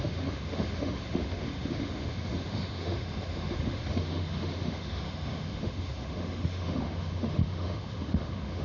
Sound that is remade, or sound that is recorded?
remade